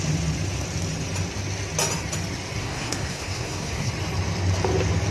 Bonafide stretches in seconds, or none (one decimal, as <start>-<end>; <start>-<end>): 0.0-2.6; 3.9-5.1